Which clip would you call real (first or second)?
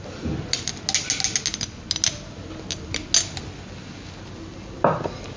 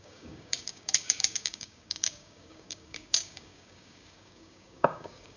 first